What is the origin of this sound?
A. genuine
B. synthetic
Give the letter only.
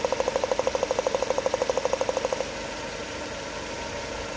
A